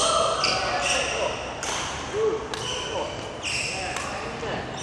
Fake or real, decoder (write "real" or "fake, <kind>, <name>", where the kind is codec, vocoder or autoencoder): real